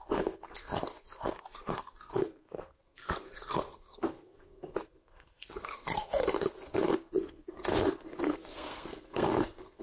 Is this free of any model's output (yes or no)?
no